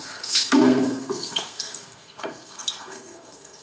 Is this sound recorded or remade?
remade